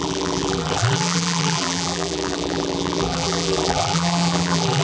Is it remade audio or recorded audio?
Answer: remade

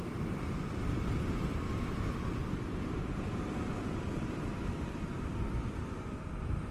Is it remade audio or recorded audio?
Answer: remade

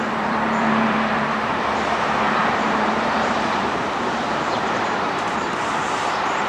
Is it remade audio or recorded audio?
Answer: remade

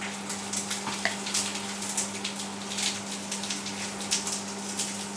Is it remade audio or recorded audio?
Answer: recorded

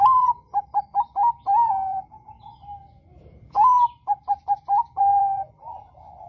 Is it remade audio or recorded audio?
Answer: remade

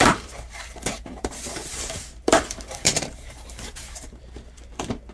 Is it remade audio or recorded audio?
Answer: remade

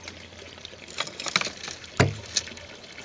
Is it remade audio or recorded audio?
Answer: recorded